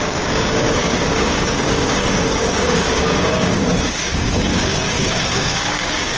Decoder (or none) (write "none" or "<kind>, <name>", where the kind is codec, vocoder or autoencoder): codec, DAC